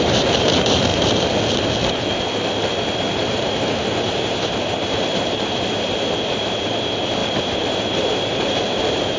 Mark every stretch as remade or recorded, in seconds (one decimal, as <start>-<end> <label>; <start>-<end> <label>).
0.0-0.9 remade; 0.9-3.0 recorded; 3.0-9.2 remade